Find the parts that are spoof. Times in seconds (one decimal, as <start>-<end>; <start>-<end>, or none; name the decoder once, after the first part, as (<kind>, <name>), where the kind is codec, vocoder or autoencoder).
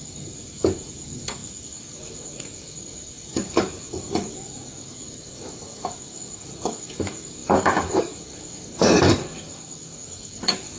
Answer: 0.0-10.8 (codec, DAC)